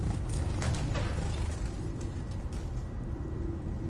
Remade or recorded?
recorded